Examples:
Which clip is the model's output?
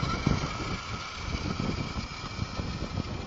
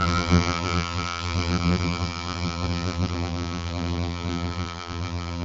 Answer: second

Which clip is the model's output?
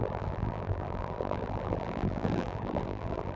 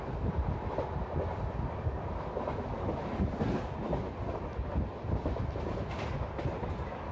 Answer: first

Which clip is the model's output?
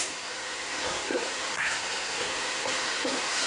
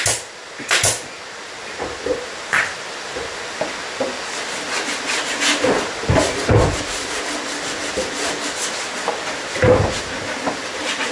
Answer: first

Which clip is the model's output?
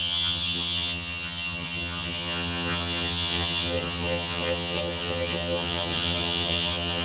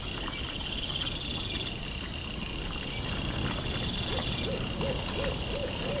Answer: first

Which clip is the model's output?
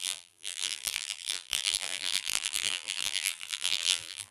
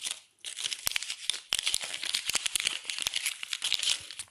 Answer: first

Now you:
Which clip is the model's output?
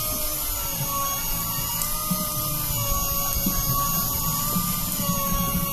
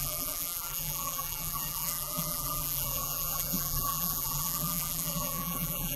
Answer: second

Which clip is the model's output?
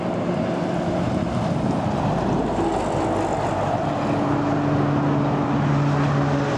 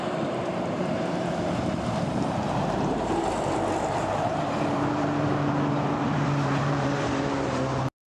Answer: second